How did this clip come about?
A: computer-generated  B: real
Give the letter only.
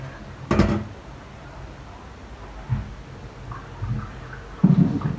B